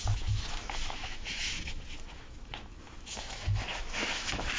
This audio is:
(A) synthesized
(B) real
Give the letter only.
A